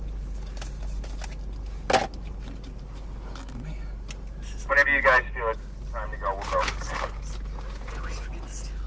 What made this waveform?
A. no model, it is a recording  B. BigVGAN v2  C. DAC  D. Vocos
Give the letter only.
A